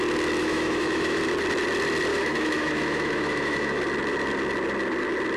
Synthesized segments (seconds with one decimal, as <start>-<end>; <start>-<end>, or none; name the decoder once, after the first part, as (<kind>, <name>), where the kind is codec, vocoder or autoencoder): 0.4-1.2 (autoencoder, DAC-VAE); 2.1-3.8